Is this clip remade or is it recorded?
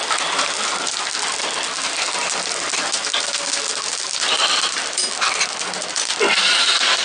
recorded